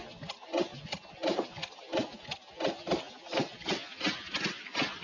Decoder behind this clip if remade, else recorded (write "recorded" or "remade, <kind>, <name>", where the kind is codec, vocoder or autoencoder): recorded